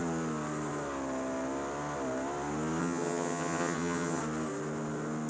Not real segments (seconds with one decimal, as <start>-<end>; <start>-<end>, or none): 2.8-4.2